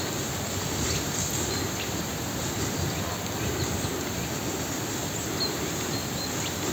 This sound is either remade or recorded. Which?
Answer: recorded